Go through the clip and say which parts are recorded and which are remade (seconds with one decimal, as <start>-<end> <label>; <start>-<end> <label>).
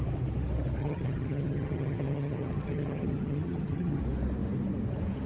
0.0-0.8 recorded; 0.8-4.0 remade; 4.0-5.3 recorded